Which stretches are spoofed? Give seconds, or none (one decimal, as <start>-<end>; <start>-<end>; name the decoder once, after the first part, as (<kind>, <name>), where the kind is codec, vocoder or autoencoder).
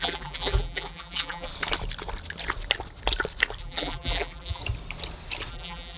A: 0.0-1.5 (vocoder, BigVGAN v2); 3.6-4.6; 5.5-6.0